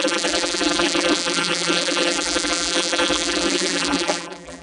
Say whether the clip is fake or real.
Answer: fake